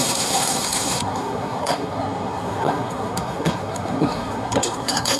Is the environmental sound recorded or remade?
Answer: remade